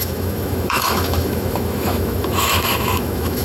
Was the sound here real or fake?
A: fake